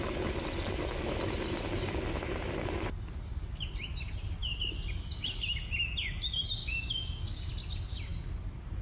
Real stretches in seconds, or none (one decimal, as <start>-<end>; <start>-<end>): 0.0-6.6; 7.5-8.8